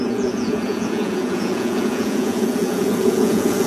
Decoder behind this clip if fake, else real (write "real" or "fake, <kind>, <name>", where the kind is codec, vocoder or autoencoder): fake, vocoder, Vocos